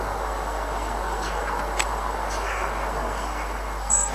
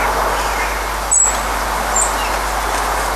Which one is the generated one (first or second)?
first